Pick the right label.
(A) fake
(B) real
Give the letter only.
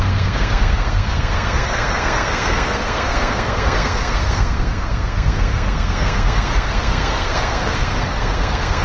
A